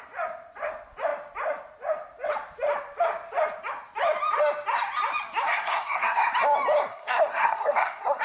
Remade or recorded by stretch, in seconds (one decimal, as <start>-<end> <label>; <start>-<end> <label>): 0.0-5.5 recorded; 5.5-6.3 remade; 6.3-6.9 recorded; 6.9-8.2 remade